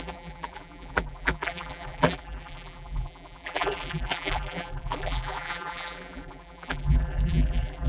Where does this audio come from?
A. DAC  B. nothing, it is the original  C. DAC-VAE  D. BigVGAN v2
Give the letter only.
D